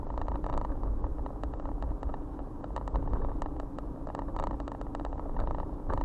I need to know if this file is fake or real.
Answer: real